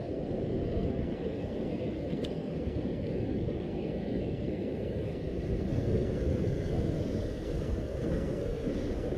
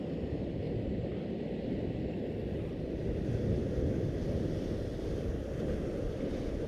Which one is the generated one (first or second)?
first